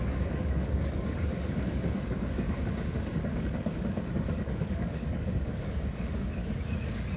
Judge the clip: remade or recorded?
remade